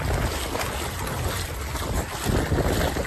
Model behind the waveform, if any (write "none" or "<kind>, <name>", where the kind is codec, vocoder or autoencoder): none